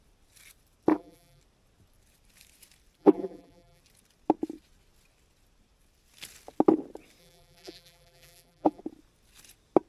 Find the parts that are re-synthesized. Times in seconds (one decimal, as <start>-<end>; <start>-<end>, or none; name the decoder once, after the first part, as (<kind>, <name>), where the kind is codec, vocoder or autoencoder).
0.9-1.4 (vocoder, BigVGAN v2); 3.0-3.8; 7.2-8.8